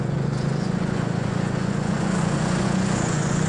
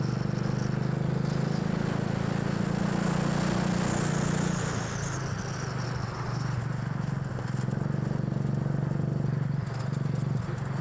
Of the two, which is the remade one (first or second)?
first